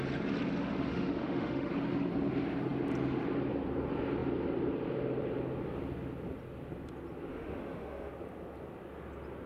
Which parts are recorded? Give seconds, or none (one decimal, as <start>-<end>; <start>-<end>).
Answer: 0.0-0.9; 1.7-7.3; 8.1-9.5